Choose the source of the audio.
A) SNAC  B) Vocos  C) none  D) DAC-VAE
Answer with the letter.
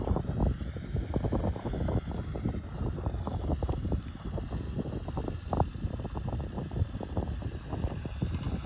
C